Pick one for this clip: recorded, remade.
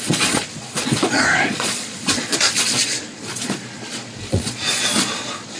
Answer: remade